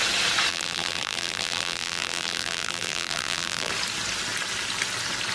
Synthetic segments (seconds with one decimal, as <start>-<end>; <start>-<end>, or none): 0.5-3.7